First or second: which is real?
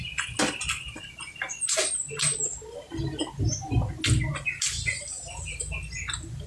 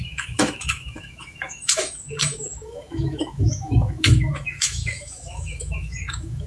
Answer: first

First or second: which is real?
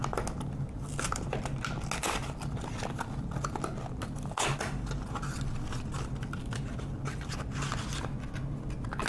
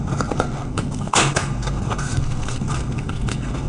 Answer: first